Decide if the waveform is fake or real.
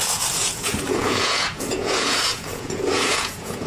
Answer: fake